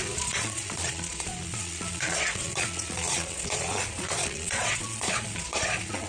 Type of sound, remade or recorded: remade